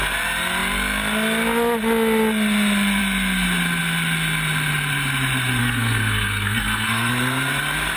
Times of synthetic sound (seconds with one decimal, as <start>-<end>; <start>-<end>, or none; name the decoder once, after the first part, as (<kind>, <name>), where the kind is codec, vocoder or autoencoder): 5.6-7.1 (codec, SNAC)